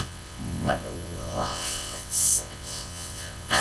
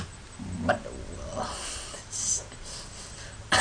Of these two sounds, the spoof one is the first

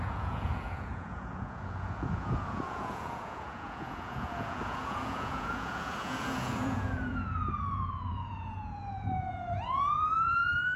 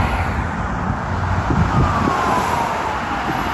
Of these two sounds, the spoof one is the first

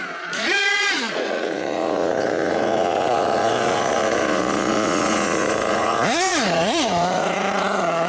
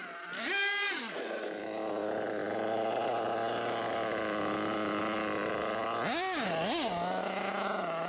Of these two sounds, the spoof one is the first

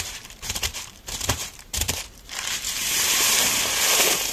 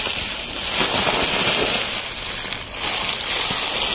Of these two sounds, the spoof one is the first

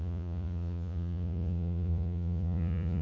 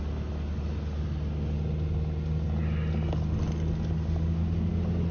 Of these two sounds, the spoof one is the first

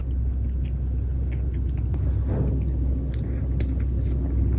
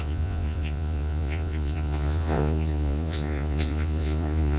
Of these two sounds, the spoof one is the second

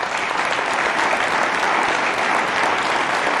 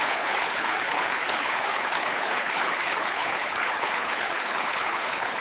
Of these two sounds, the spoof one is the second